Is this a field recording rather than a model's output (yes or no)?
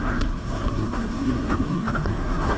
no